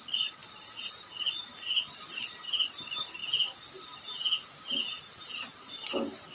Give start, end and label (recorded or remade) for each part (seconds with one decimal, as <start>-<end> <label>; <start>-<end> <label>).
0.0-0.4 remade; 0.4-2.3 recorded; 2.3-3.2 remade; 3.2-5.7 recorded; 5.7-6.3 remade